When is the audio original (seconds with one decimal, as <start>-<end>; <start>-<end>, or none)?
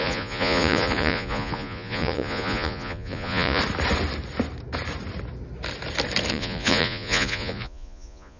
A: 3.6-6.3